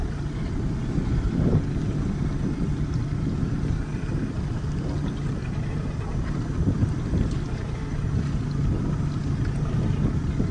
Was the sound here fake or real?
real